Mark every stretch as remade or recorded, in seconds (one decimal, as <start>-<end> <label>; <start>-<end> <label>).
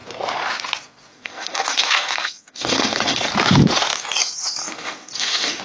0.0-1.1 recorded; 1.1-3.3 remade; 3.3-4.6 recorded; 4.6-5.6 remade